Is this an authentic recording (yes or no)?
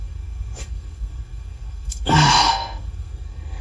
no